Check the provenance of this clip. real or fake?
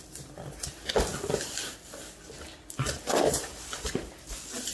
real